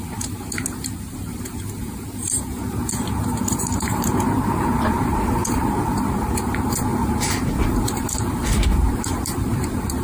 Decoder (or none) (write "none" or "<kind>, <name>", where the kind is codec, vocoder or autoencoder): vocoder, BigVGAN v2